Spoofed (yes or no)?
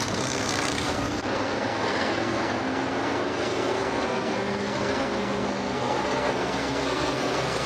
yes